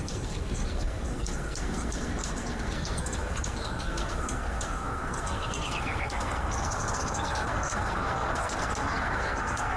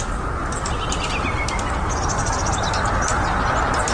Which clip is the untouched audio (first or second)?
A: second